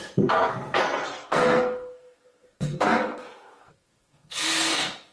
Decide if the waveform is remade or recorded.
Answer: remade